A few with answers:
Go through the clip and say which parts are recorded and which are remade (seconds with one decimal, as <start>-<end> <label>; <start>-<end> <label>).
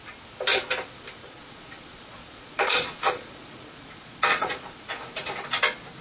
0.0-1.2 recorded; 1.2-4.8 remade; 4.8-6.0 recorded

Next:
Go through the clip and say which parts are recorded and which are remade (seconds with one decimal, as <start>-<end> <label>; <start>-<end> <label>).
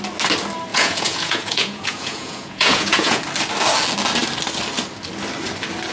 0.0-0.7 recorded; 0.7-3.2 remade; 3.2-5.9 recorded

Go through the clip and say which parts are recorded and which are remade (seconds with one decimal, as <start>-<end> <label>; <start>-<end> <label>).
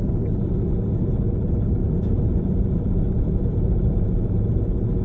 0.0-1.8 recorded; 1.8-5.0 remade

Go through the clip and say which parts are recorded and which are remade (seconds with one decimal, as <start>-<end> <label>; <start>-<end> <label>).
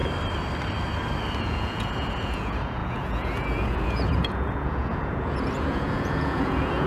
0.0-1.4 recorded; 1.4-6.9 remade